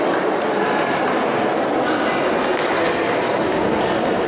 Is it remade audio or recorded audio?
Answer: recorded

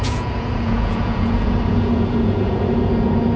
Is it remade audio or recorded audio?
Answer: remade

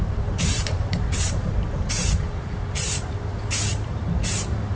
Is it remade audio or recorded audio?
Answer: remade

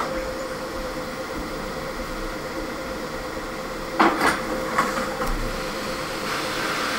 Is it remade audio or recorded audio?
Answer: remade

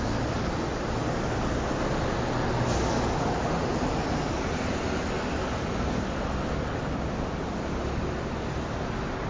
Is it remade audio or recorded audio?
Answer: recorded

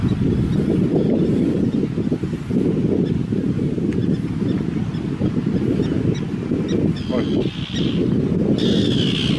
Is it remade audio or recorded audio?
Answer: recorded